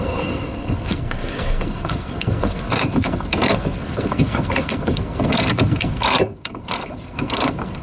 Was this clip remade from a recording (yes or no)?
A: yes